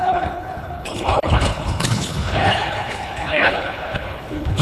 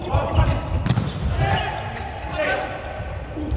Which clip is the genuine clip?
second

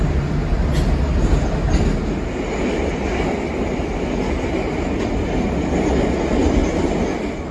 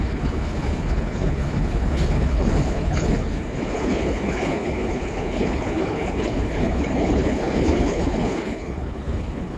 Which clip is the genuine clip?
first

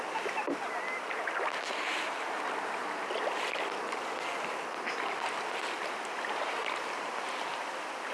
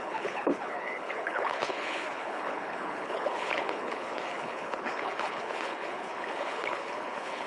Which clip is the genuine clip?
first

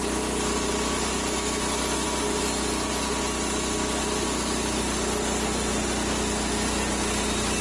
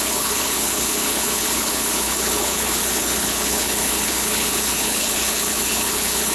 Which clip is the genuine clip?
first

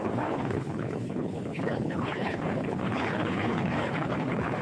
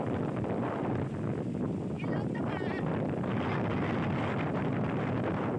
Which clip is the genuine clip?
second